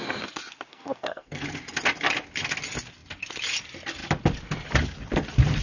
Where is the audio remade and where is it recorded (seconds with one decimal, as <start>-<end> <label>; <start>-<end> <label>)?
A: 0.0-0.7 recorded; 0.7-1.4 remade; 1.4-5.6 recorded